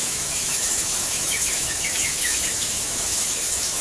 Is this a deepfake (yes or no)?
yes